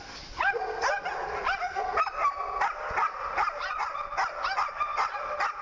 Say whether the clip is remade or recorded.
recorded